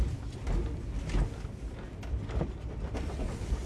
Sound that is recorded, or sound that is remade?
recorded